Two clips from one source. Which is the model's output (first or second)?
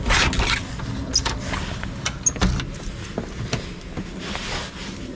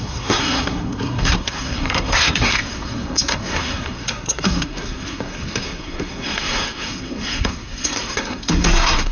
second